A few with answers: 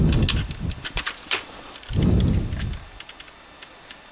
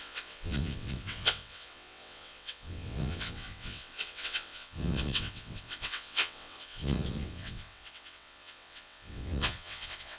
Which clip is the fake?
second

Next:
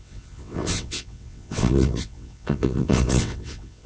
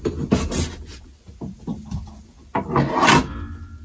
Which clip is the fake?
first